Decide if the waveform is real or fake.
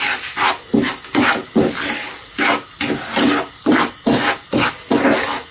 real